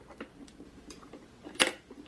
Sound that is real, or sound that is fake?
fake